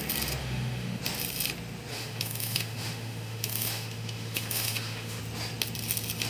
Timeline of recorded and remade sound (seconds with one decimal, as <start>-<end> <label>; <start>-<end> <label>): 0.0-0.4 recorded; 0.4-1.0 remade; 1.0-1.9 recorded; 1.9-5.2 remade; 5.2-6.3 recorded